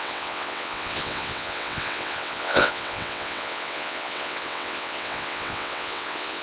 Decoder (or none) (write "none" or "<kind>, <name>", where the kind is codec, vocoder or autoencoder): vocoder, WaveNeXt